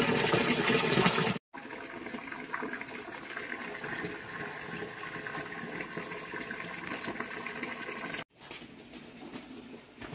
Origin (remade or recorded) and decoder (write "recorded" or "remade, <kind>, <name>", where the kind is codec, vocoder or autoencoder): recorded